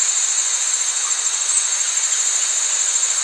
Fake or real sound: fake